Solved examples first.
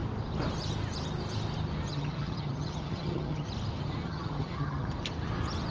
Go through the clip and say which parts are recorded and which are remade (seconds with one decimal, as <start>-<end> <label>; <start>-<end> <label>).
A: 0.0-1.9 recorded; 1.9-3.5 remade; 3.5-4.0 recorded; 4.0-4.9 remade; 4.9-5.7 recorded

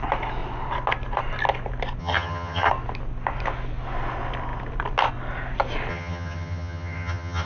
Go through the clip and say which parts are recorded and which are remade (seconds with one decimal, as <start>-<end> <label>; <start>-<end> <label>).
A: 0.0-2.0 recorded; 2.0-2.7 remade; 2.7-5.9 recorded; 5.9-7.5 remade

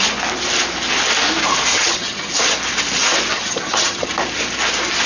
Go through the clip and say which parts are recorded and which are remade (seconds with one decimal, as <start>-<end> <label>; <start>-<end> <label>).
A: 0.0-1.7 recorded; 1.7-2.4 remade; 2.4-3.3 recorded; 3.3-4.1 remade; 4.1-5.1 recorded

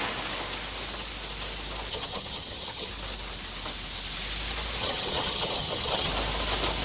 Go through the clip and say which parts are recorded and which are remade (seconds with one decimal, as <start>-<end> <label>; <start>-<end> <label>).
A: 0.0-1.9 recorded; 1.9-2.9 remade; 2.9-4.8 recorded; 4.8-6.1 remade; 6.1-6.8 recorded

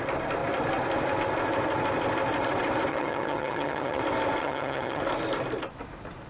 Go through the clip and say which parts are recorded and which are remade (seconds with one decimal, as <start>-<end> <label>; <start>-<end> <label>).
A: 0.0-2.9 recorded; 2.9-4.0 remade; 4.0-4.4 recorded; 4.4-5.0 remade; 5.0-6.3 recorded

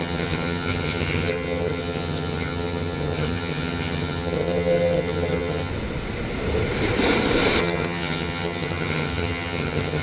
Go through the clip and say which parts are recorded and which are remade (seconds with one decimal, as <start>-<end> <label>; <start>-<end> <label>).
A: 0.0-5.7 remade; 5.7-7.6 recorded; 7.6-10.0 remade

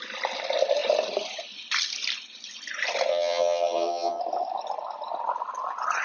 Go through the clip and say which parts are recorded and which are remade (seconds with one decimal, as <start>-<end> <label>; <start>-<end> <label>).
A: 0.0-3.1 recorded; 3.1-4.2 remade; 4.2-6.0 recorded

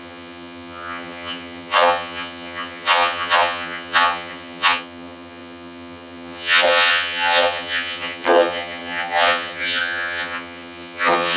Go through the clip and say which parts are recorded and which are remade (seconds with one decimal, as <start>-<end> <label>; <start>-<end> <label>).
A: 0.0-11.4 remade